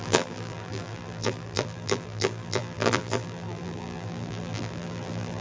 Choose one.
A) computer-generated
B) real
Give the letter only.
A